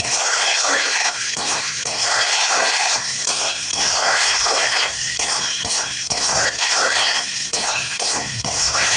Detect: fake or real fake